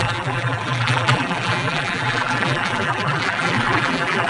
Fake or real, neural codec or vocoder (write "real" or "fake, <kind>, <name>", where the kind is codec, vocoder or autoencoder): fake, vocoder, BigVGAN v2